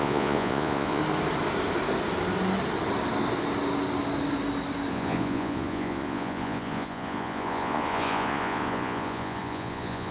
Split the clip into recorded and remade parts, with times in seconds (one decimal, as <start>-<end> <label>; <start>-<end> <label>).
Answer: 0.0-1.0 remade; 1.0-4.9 recorded; 4.9-10.1 remade